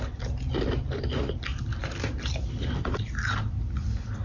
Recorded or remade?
recorded